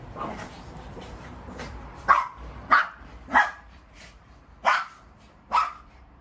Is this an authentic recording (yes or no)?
no